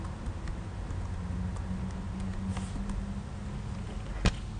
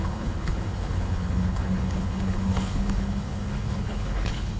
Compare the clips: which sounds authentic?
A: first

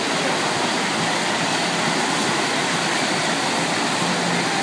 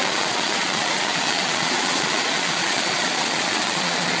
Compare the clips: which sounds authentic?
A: first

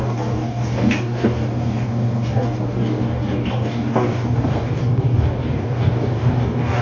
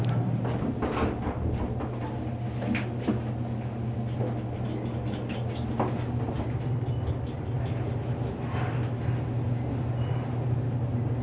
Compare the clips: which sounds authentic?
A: second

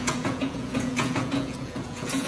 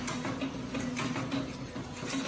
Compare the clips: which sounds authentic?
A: second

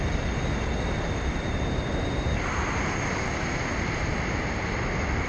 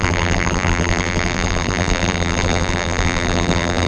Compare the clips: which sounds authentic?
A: first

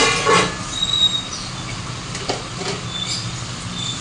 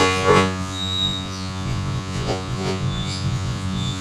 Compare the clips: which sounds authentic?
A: first